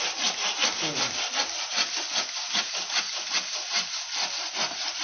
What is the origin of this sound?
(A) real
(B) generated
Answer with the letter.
A